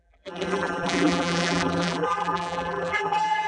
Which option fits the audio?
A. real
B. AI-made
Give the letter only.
B